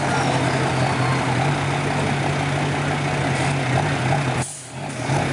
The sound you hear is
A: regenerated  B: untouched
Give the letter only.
B